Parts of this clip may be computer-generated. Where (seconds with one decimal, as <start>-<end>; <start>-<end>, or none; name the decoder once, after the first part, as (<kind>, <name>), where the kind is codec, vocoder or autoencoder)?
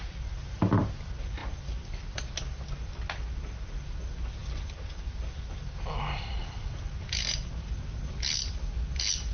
none